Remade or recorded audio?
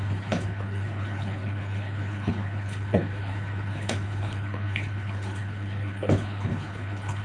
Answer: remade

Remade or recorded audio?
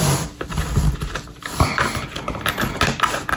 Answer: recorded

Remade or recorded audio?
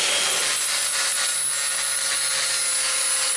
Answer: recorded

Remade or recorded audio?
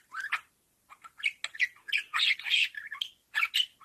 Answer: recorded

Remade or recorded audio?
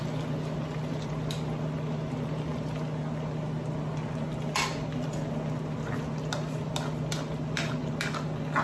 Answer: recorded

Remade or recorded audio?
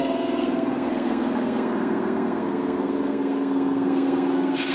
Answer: remade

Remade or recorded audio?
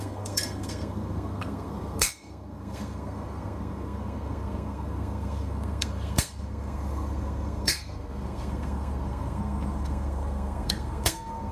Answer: remade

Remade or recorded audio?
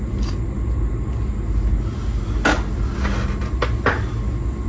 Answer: recorded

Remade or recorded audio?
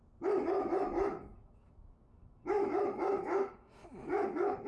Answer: remade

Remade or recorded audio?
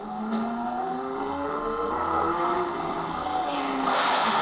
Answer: remade